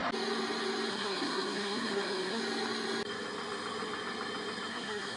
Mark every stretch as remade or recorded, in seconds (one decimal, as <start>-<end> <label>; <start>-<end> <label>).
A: 0.0-0.9 recorded; 0.9-2.4 remade; 2.4-4.7 recorded; 4.7-5.2 remade